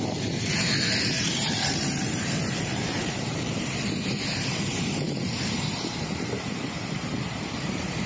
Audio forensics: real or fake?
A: fake